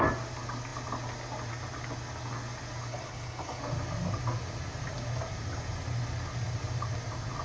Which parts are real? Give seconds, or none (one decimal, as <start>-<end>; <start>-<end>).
0.0-2.9; 3.6-7.4